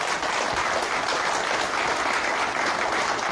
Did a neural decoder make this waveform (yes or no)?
no